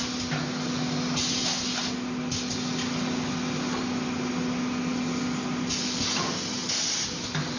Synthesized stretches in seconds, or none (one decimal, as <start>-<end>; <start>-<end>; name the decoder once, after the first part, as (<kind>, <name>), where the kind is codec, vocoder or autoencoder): none